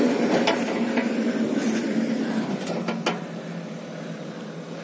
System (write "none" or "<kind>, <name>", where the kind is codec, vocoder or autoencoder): none